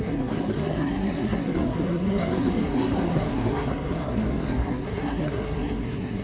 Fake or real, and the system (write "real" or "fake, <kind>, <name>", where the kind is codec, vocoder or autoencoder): fake, codec, SNAC